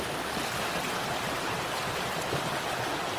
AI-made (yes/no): yes